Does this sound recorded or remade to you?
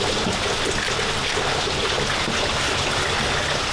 recorded